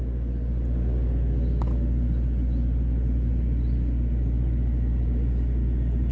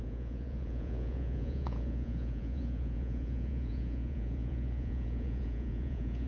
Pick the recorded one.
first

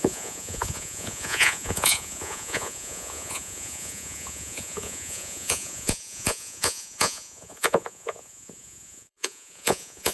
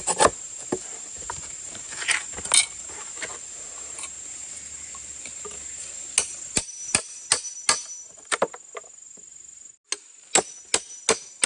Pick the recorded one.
second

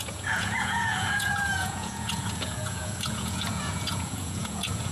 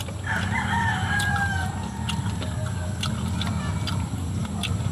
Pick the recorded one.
second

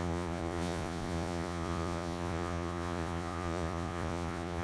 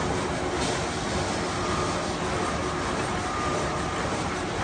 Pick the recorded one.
second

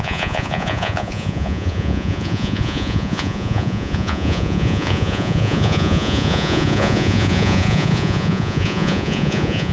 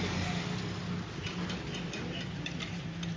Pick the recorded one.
second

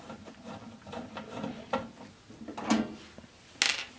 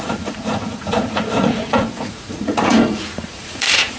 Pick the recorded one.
first